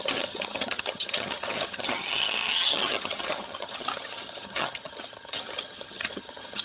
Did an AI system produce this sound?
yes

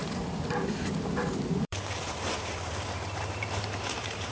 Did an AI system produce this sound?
yes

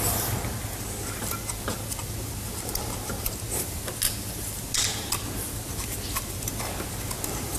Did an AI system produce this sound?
no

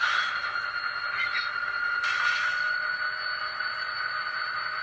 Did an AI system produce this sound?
no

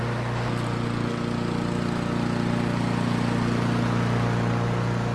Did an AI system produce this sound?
no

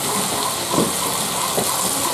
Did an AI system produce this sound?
no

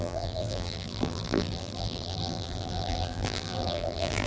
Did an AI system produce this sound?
yes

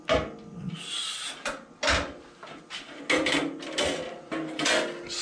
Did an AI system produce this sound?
no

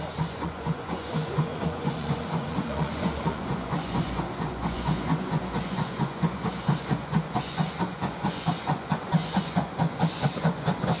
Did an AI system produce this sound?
yes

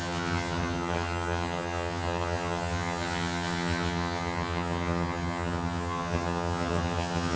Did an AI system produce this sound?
yes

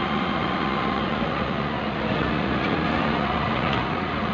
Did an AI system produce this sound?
yes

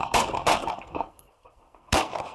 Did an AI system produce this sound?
yes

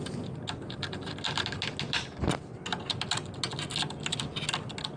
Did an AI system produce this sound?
no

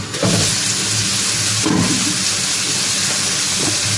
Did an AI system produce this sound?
no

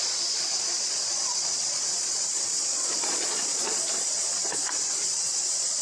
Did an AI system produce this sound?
yes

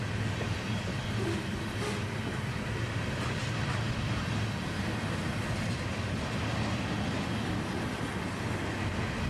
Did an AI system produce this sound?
no